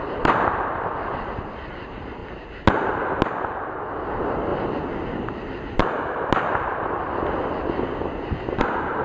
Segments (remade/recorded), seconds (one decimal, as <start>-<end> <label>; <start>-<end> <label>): 0.0-2.2 remade; 2.2-4.1 recorded; 4.1-4.5 remade; 4.5-8.6 recorded; 8.6-9.0 remade